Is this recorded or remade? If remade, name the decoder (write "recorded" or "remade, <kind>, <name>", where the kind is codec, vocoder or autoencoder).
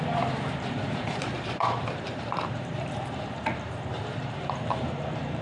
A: remade, vocoder, BigVGAN v2